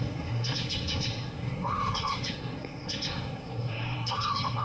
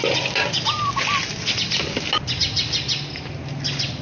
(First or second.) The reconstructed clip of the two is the first